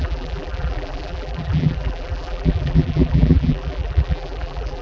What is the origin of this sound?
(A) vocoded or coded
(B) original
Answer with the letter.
A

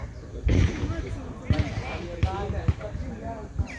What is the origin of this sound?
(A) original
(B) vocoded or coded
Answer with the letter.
A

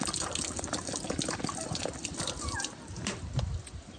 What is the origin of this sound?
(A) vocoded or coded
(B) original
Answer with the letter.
B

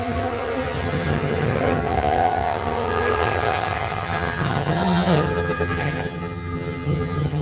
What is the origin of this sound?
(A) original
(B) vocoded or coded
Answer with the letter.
B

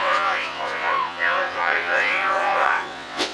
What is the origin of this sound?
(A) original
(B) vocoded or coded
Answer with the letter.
B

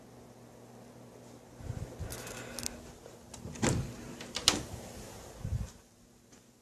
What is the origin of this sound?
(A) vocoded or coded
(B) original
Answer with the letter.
B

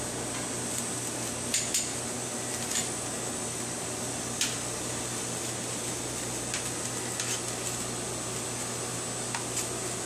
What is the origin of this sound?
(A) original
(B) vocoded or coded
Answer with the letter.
A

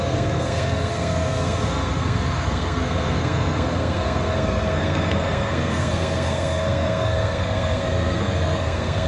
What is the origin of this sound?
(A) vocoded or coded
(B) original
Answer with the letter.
A